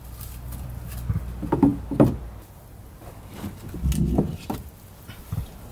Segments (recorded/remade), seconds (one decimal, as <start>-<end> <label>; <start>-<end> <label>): 0.0-5.7 recorded